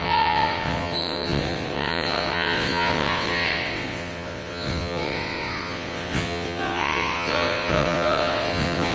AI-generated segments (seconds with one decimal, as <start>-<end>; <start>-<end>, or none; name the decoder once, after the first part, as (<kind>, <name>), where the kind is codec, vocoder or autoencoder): 0.0-8.9 (vocoder, WaveNeXt)